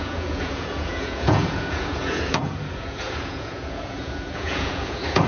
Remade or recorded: remade